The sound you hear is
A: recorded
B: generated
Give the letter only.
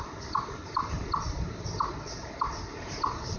A